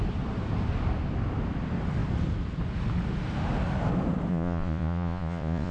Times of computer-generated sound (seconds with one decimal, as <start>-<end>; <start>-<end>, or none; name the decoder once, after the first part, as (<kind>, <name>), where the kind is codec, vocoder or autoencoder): 4.3-5.7 (vocoder, Vocos)